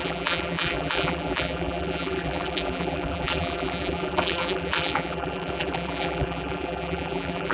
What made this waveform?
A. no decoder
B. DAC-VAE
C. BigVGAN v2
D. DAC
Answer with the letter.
C